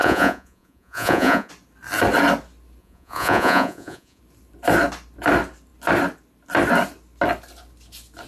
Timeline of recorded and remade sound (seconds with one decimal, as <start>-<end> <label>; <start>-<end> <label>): 0.0-1.5 remade; 1.5-2.8 recorded; 2.8-4.2 remade; 4.2-8.3 recorded